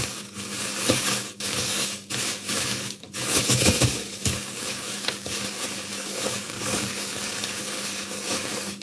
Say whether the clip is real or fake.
fake